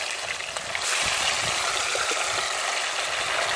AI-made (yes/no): no